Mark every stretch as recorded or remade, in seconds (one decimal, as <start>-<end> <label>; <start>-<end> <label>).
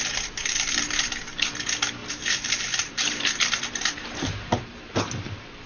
0.0-0.4 recorded; 0.4-1.0 remade; 1.0-2.0 recorded; 2.0-5.7 remade